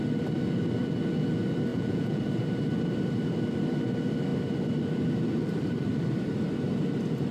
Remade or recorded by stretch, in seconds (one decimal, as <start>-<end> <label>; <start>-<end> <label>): 0.0-1.7 recorded; 1.7-2.2 remade; 2.2-7.3 recorded